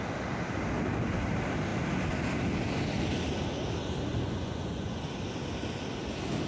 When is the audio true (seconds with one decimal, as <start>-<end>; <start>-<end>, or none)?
0.0-4.1; 5.0-6.5